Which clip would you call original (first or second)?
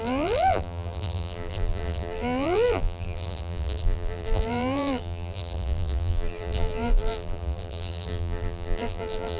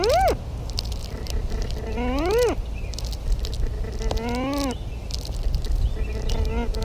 second